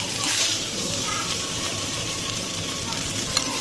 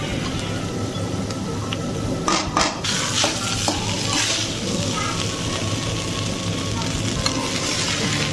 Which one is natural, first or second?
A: second